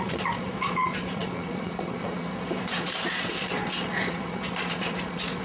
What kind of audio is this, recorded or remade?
remade